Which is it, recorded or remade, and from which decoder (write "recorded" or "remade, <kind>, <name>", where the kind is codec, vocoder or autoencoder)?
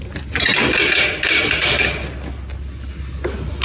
recorded